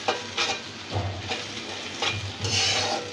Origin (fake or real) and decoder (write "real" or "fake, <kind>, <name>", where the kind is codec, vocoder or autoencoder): real